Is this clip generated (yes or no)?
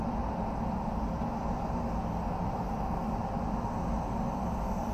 no